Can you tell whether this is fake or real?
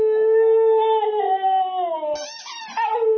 real